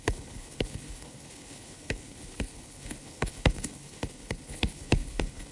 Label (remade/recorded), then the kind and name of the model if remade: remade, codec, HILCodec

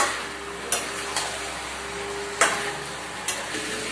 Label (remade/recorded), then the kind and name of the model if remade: recorded